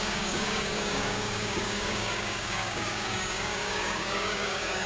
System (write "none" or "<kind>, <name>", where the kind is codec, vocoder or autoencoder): codec, DAC